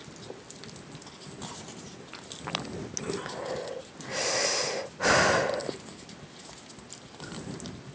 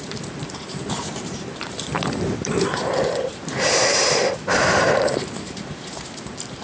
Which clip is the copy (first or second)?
second